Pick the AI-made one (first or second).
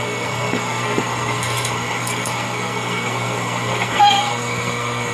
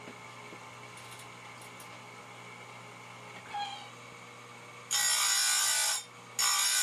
first